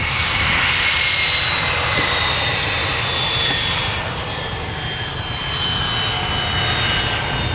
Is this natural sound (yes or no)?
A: yes